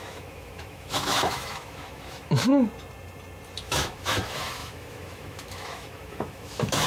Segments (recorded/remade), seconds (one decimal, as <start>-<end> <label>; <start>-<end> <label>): 0.0-2.5 remade; 2.5-3.6 recorded; 3.6-6.9 remade